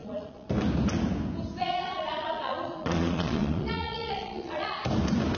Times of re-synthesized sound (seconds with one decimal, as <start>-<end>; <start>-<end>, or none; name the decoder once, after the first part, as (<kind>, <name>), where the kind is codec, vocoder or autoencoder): 0.0-0.5 (vocoder, Vocos); 1.6-4.8